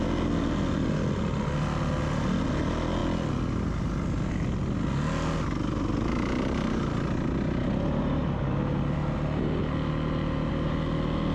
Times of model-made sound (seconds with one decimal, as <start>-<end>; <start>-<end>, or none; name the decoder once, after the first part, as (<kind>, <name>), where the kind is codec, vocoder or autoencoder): none

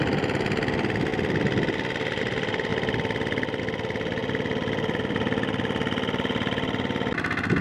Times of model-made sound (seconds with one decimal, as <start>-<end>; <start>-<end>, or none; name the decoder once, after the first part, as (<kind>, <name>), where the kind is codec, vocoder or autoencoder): none

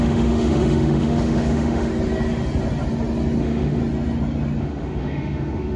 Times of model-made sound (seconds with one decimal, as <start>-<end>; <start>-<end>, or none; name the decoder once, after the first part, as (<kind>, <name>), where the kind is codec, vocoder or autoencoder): 0.0-1.9 (autoencoder, DAC-VAE); 3.4-3.8; 4.6-5.8

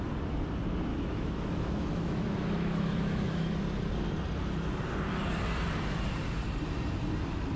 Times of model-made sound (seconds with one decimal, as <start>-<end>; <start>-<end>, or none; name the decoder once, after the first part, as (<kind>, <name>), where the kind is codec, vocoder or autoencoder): 0.9-3.6 (autoencoder, DAC-VAE)

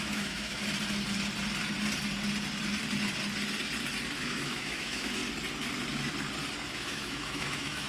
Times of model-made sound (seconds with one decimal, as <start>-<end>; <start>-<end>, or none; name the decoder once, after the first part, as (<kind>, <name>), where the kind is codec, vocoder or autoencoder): 0.0-0.6 (autoencoder, DAC-VAE); 4.2-5.2; 6.7-7.9

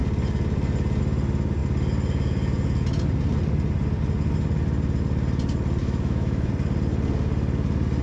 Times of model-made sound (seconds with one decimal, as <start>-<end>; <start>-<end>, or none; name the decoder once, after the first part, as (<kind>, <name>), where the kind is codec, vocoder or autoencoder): 5.8-6.5 (autoencoder, DAC-VAE)